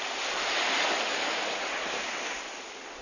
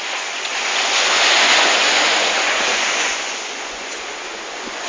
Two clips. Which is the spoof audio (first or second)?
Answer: second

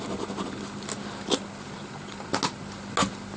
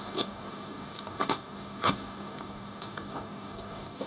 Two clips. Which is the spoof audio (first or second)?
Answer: second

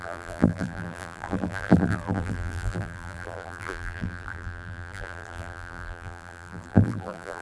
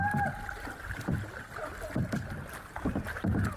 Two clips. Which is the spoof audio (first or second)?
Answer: first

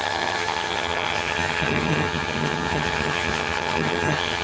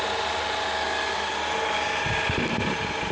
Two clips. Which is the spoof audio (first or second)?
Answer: first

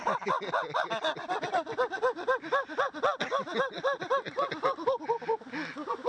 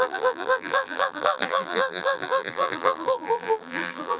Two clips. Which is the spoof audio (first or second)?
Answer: second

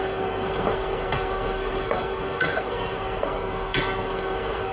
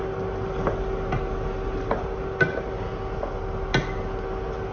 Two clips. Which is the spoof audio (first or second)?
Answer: first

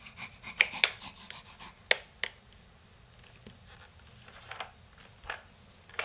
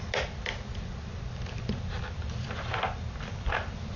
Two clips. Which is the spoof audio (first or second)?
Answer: second